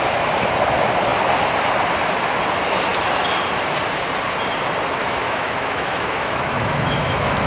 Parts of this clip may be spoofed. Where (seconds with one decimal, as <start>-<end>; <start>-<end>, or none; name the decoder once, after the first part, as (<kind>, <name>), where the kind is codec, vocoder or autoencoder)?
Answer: 5.0-7.5 (autoencoder, DAC-VAE)